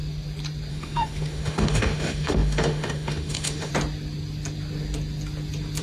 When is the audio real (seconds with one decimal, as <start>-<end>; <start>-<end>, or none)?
0.0-0.7; 3.7-5.8